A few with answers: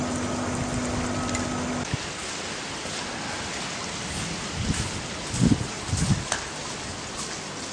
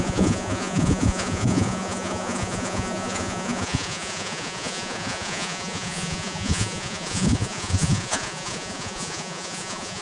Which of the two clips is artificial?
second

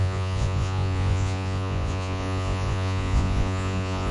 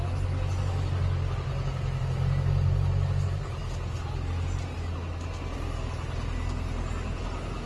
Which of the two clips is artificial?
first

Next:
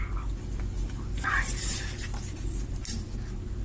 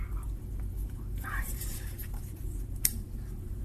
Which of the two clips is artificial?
second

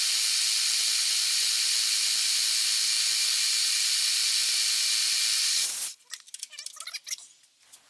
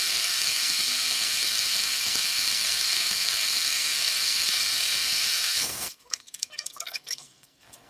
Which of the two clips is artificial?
second